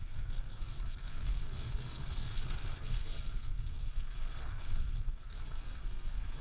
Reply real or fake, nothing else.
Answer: fake